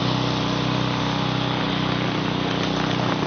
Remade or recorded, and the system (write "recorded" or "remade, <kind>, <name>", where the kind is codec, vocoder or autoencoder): recorded